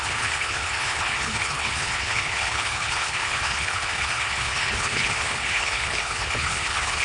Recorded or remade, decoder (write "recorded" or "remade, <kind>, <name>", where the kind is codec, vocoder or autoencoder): remade, codec, HILCodec